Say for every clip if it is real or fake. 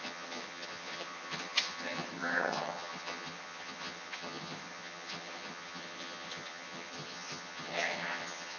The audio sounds fake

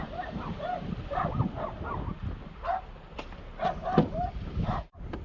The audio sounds real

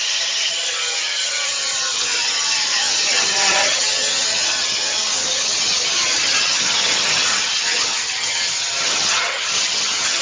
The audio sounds fake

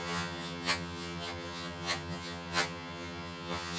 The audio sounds fake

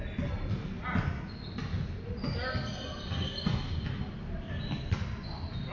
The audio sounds real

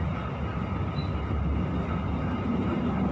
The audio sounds real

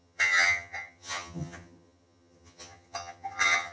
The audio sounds fake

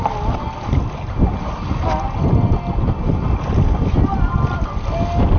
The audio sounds real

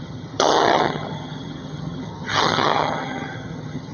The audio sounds fake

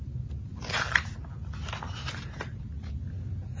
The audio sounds real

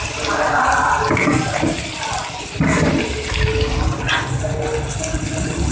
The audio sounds real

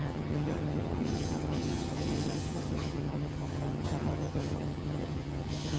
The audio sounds fake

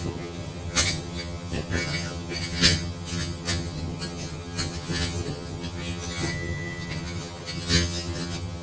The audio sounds fake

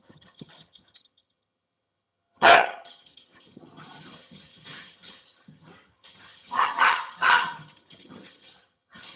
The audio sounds fake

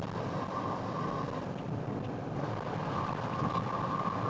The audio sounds real